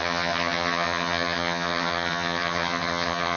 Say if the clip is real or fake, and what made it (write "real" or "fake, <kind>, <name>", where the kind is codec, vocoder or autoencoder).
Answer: fake, vocoder, HiFi-GAN